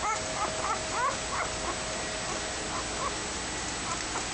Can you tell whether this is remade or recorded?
recorded